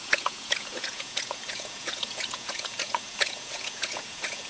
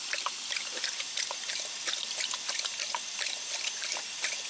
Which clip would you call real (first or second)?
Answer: second